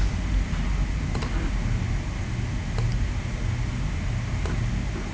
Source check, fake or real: real